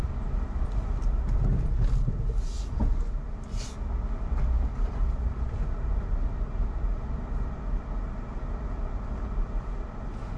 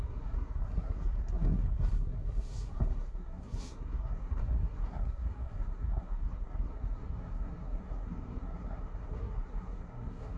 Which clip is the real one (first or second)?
first